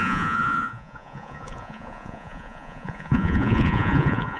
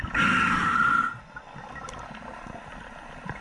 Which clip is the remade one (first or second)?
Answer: first